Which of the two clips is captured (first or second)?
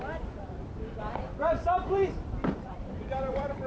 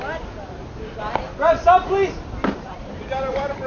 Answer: second